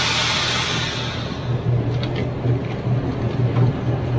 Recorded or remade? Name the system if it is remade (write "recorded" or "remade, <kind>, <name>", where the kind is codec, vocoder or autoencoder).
recorded